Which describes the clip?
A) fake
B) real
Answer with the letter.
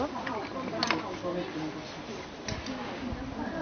B